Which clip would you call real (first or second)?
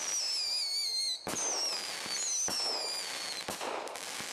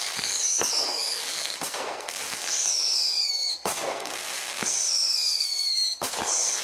first